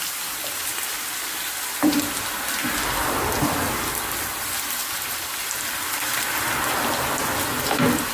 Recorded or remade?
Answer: remade